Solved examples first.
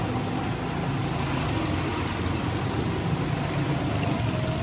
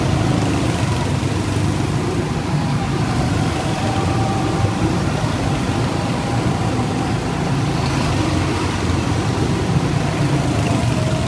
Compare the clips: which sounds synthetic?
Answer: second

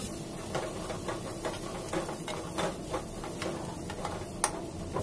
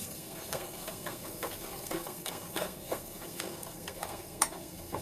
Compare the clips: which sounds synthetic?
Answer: second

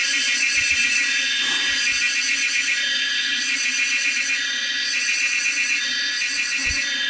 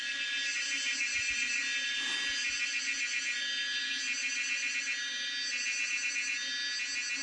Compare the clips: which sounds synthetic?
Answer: first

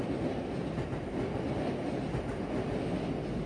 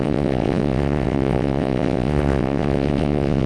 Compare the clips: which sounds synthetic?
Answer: second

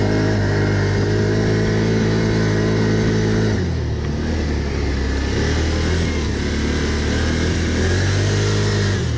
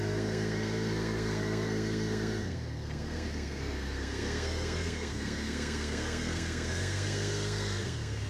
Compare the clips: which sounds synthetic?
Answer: second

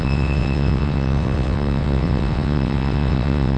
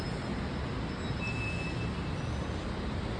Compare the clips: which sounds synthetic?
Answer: first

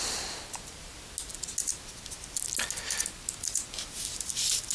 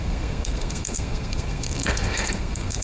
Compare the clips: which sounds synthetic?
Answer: second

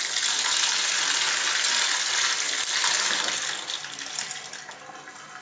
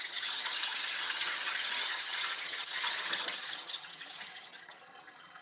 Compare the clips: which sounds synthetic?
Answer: second